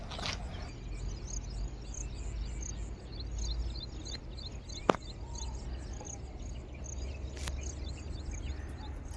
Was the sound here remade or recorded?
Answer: recorded